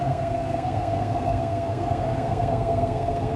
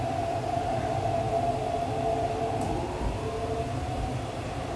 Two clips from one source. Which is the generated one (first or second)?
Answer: first